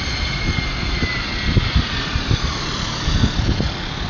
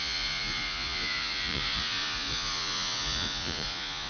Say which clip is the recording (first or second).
first